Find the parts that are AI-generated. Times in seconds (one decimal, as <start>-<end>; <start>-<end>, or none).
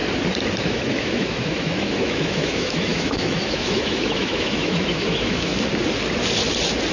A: 0.6-5.5